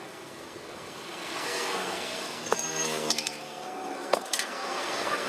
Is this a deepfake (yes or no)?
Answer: yes